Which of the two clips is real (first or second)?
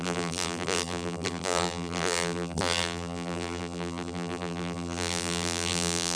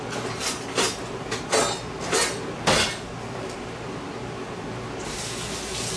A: second